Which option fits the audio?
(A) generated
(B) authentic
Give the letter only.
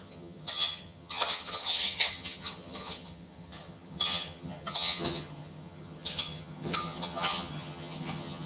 A